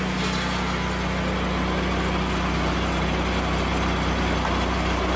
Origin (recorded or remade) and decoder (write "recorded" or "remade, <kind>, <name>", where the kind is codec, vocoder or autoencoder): recorded